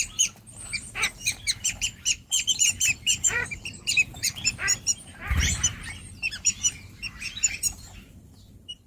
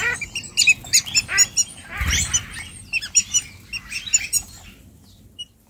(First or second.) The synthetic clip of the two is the first